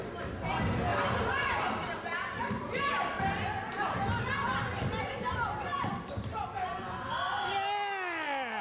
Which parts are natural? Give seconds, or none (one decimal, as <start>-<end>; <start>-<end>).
0.0-0.9; 2.8-4.7; 7.5-8.6